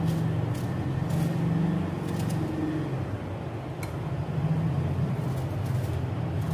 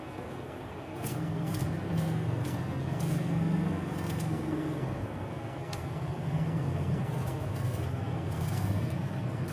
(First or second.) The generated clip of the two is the second